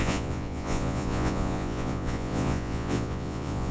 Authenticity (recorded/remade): remade